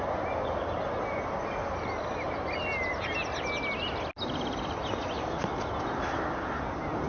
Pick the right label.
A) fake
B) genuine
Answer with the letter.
B